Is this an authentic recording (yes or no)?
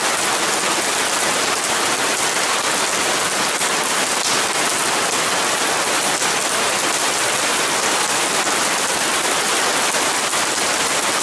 yes